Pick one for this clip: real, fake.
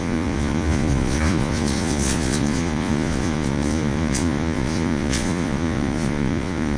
fake